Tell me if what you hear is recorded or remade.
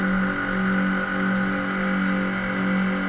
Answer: recorded